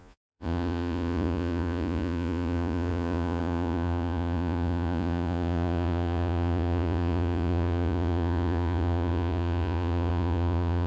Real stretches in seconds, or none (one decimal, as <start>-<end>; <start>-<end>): none